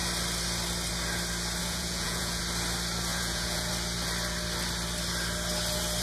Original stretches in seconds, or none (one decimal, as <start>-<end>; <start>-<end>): 0.0-1.6; 2.4-3.1; 3.7-6.0